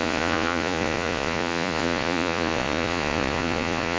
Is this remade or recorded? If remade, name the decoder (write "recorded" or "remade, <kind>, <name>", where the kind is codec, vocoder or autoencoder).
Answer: remade, vocoder, Vocos